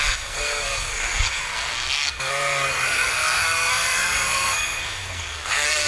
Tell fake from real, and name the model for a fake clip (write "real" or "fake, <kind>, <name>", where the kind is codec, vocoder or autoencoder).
fake, codec, SNAC